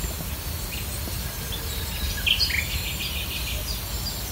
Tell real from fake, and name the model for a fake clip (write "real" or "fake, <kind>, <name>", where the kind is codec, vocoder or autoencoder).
real